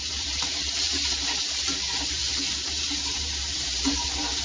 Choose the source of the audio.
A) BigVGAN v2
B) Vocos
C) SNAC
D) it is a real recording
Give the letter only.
A